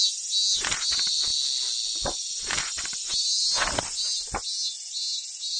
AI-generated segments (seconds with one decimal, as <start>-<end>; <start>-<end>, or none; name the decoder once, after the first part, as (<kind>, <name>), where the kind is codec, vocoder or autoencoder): none

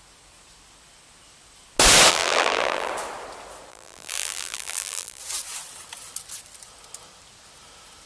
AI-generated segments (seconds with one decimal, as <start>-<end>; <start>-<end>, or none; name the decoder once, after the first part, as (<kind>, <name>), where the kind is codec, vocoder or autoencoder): 2.1-2.9 (vocoder, BigVGAN v2); 3.7-5.2

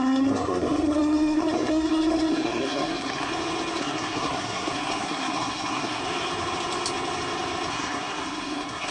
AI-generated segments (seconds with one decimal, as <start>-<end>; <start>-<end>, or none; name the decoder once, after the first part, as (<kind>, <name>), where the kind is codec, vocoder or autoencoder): 0.0-3.3 (codec, SNAC); 3.8-6.0; 7.7-8.9

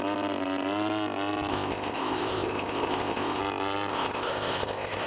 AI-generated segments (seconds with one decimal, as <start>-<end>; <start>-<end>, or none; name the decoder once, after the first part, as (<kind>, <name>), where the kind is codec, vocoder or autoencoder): 1.5-3.4 (codec, ZipCodec); 3.9-5.1

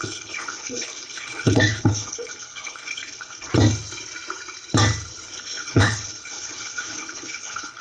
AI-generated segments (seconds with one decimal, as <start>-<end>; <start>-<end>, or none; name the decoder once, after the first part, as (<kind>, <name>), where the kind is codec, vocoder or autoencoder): 0.0-3.5 (codec, HILCodec); 5.4-7.8